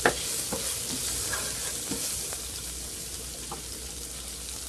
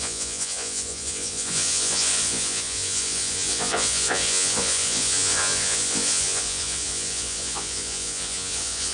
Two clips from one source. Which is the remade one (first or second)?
second